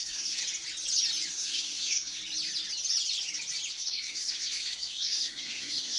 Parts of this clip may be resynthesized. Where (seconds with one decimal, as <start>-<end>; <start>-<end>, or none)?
0.0-0.4; 1.3-2.2; 3.7-6.0